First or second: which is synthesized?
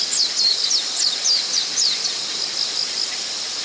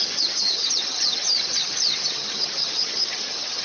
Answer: second